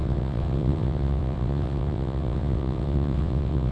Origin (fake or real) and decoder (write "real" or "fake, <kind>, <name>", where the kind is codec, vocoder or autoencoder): fake, vocoder, WaveNeXt